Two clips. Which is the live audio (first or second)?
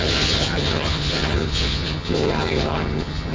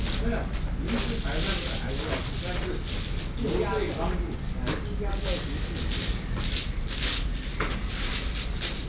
second